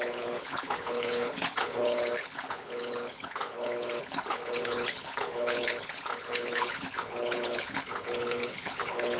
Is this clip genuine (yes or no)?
no